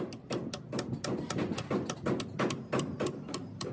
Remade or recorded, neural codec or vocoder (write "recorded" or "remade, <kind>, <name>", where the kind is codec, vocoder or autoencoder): recorded